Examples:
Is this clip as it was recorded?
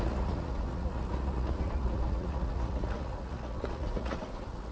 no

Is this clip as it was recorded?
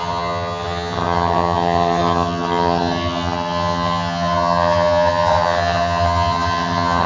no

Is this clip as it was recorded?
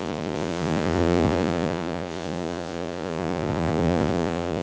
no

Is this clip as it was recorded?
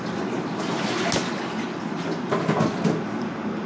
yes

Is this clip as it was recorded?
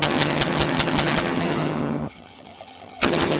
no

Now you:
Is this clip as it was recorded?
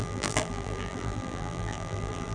no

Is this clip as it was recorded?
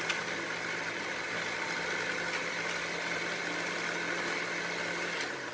yes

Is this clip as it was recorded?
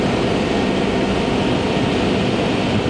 yes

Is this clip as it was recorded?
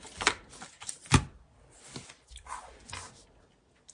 yes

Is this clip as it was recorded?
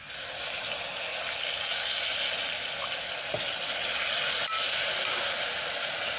yes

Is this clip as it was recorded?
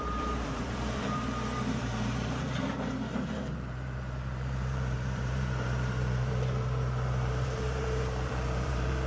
no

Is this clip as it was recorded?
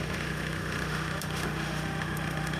no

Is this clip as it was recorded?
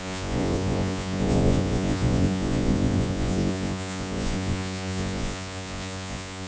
no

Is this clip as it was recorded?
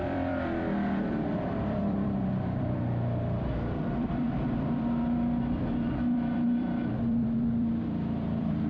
no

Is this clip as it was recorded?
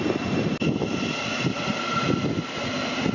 yes